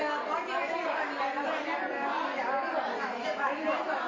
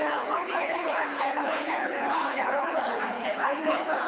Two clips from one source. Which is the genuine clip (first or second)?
first